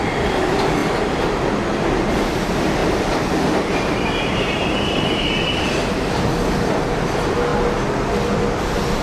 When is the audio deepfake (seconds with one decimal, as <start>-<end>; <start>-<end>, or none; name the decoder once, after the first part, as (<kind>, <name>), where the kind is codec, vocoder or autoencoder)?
2.8-6.1 (vocoder, BigVGAN v2)

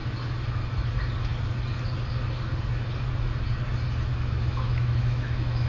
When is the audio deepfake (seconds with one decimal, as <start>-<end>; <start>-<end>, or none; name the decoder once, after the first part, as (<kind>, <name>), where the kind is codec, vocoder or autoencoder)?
4.1-5.7 (autoencoder, DAC-VAE)

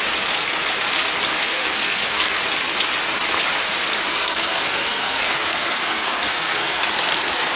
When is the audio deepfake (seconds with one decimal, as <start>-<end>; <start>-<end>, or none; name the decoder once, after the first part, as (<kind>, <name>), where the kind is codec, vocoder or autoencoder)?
1.4-2.4 (codec, SNAC); 4.1-6.8

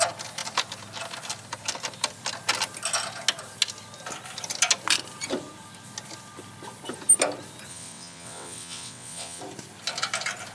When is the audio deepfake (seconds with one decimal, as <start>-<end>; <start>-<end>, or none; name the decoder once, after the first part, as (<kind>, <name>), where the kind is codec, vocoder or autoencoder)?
7.7-9.4 (vocoder, WaveNeXt)

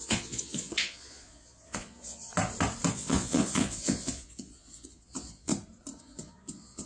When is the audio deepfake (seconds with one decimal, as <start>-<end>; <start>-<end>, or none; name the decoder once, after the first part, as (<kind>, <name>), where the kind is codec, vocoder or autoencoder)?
0.0-2.3 (vocoder, Vocos); 2.9-5.5; 6.0-6.9

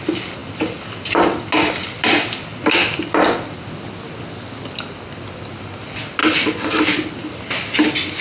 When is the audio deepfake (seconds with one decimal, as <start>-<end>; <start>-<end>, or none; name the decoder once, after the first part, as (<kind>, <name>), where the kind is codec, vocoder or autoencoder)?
none

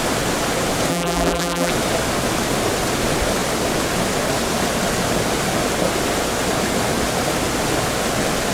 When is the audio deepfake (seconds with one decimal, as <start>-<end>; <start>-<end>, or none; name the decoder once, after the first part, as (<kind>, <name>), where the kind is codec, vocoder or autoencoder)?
0.9-1.7 (vocoder, BigVGAN v2)

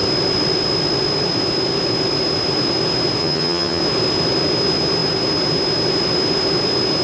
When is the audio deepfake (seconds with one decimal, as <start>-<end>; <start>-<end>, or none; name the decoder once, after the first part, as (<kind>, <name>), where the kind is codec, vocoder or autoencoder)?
3.2-3.8 (vocoder, HiFi-GAN)